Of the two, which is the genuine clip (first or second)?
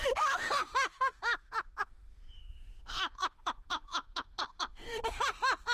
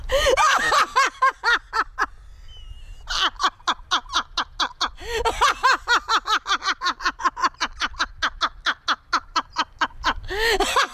second